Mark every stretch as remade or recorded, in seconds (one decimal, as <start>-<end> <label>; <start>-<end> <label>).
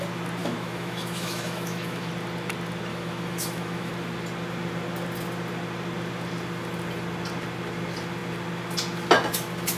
0.0-0.4 recorded; 0.4-2.1 remade; 2.1-2.9 recorded; 2.9-3.9 remade; 3.9-9.8 recorded